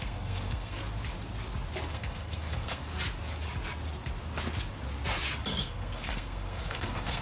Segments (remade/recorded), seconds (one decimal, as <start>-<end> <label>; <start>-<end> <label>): 0.0-0.8 remade; 0.8-1.9 recorded; 1.9-2.8 remade; 2.8-5.6 recorded; 5.6-7.2 remade